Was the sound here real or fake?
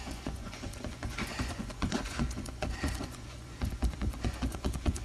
fake